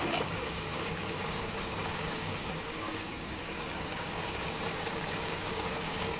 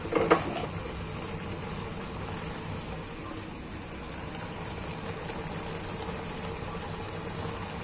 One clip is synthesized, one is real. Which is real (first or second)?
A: second